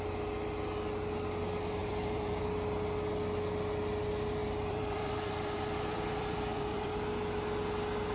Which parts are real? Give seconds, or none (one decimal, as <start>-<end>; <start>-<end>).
0.0-1.8; 2.4-4.4; 6.9-8.1